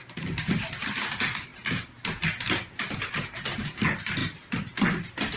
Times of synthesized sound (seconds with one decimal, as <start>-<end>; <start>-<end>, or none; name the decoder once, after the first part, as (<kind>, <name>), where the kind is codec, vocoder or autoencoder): none